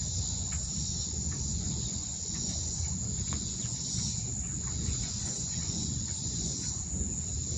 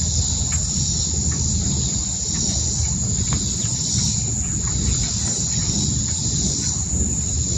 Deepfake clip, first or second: first